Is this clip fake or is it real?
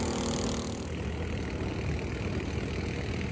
real